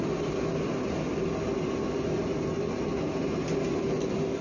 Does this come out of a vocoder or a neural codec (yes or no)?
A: no